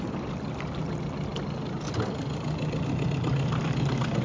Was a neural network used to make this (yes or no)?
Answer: no